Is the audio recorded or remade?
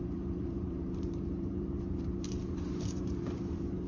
remade